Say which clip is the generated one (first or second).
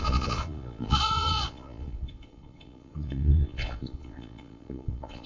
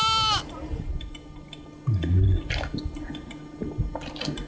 first